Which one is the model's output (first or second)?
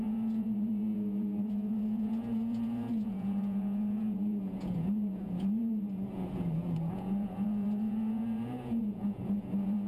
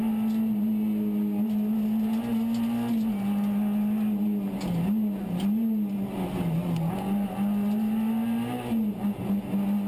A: first